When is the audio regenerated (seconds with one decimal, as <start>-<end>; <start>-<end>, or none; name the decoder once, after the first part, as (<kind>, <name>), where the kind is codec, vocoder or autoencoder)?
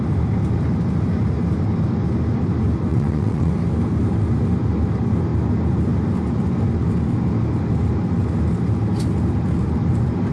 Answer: 2.9-3.5 (vocoder, WaveNeXt)